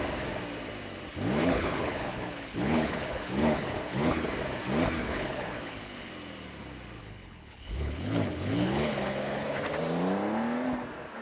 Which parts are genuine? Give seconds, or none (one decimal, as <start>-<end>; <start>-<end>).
0.0-1.4; 4.3-5.0; 6.1-7.0; 9.6-11.2